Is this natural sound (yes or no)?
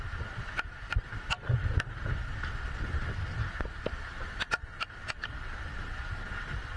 yes